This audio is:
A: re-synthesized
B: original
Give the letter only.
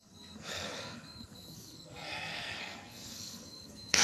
A